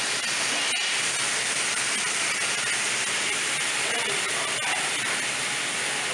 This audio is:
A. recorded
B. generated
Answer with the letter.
A